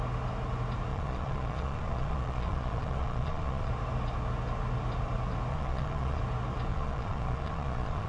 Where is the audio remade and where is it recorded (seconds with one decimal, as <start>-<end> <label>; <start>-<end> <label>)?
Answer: 0.0-0.9 recorded; 0.9-3.7 remade; 3.7-5.5 recorded; 5.5-6.2 remade; 6.2-6.7 recorded; 6.7-8.1 remade